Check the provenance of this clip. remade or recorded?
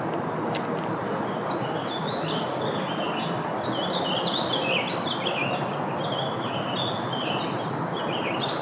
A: recorded